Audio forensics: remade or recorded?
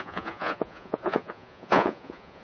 remade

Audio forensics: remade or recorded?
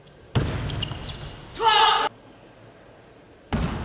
recorded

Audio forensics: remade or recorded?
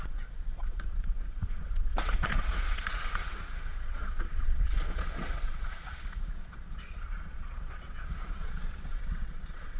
remade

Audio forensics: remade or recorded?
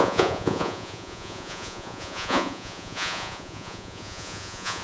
remade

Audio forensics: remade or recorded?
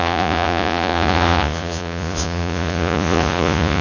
remade